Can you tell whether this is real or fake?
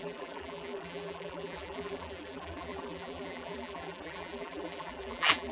fake